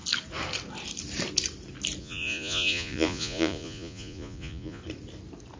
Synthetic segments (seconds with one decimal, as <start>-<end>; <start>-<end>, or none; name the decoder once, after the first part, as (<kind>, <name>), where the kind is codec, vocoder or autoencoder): 2.0-4.8 (vocoder, Vocos)